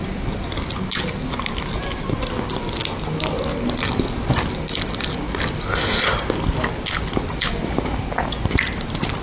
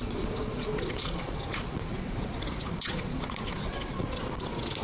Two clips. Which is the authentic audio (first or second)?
first